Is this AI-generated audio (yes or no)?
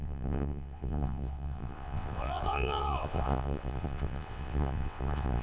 yes